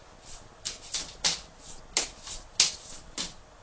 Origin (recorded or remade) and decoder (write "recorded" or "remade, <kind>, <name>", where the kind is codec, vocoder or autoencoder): recorded